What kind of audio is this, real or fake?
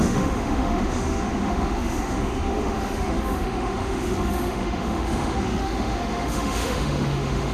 fake